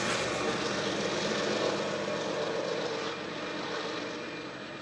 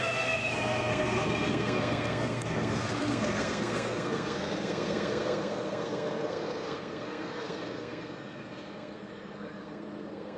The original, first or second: first